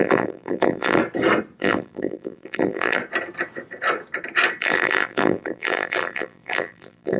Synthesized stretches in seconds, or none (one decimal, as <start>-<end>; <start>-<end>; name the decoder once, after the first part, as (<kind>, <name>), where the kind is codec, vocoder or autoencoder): 0.0-1.0 (vocoder, BigVGAN v2); 1.6-3.0; 4.6-7.2